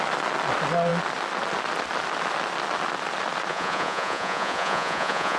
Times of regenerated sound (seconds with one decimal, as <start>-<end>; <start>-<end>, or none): 3.5-5.4